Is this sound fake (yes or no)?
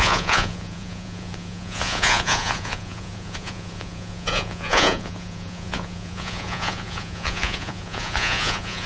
yes